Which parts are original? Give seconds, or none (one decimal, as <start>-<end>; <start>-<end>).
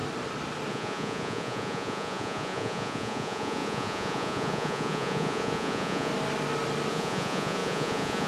0.0-0.7; 6.1-6.9